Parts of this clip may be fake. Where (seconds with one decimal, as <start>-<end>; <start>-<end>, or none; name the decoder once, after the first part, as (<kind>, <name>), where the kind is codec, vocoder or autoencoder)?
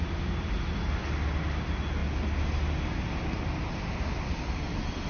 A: none